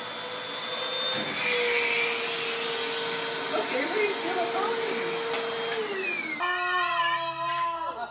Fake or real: real